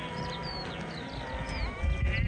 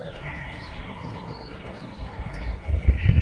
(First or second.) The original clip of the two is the first